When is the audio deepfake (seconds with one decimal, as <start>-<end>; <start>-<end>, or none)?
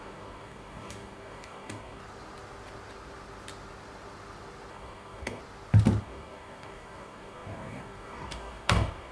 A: 0.0-2.0; 4.7-5.4; 6.0-9.1